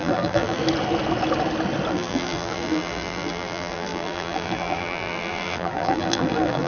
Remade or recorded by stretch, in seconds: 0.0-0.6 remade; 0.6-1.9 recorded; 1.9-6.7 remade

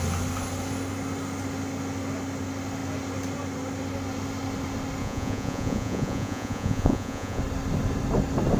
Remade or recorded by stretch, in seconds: 0.0-5.0 recorded; 5.0-7.4 remade; 7.4-8.6 recorded

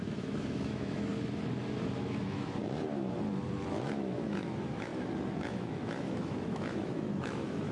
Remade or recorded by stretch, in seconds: 0.0-1.1 remade; 1.1-2.0 recorded; 2.0-2.6 remade; 2.6-3.7 recorded; 3.7-4.9 remade; 4.9-5.4 recorded; 5.4-7.7 remade

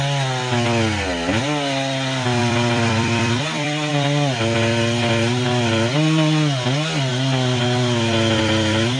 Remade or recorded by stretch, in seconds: 0.0-2.4 recorded; 2.4-3.9 remade; 3.9-9.0 recorded

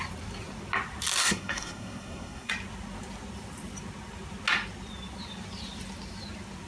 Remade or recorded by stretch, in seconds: 0.0-1.2 recorded; 1.2-2.5 remade; 2.5-6.7 recorded